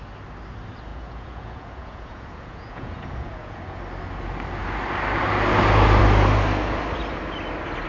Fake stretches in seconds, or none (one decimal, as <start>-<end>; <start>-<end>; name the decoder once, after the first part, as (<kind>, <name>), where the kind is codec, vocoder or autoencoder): 0.9-3.8 (vocoder, Vocos)